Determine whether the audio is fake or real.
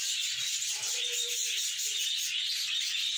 real